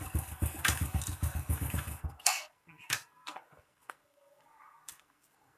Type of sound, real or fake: fake